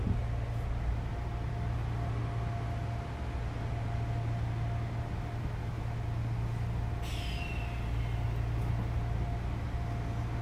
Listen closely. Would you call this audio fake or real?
real